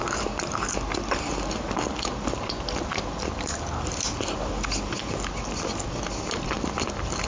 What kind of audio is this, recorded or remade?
recorded